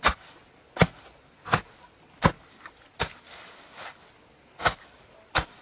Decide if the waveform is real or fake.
real